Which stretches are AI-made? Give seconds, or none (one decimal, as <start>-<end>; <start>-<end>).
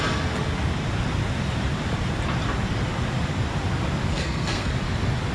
4.1-4.7